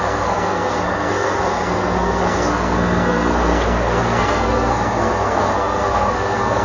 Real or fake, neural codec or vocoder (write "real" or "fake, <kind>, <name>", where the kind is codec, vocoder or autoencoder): fake, codec, SNAC